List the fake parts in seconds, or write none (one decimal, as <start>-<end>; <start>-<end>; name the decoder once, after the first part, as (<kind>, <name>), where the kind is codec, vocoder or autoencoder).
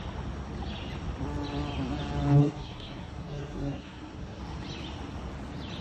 2.4-4.4 (codec, SNAC)